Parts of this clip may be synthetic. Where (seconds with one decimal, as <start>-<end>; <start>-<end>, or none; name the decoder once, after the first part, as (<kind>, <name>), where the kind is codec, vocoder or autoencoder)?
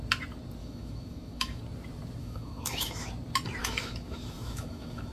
0.6-1.6 (autoencoder, DAC-VAE); 2.2-3.1; 3.6-5.1